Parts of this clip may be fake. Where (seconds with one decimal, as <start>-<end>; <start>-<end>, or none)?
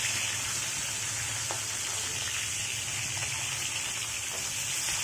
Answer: none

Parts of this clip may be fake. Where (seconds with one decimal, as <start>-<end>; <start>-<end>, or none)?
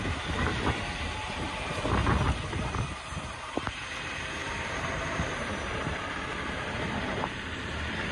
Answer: 0.0-8.1